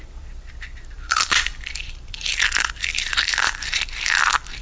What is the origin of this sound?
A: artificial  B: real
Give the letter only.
A